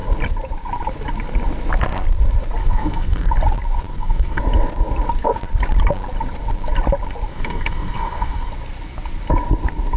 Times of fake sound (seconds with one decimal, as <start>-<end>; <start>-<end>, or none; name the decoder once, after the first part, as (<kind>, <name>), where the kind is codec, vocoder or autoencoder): 2.6-3.3 (codec, SNAC); 3.9-4.4; 7.3-8.5